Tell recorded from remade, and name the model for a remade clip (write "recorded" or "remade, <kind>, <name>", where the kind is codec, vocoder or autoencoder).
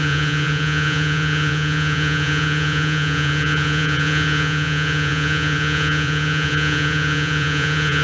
remade, vocoder, Vocos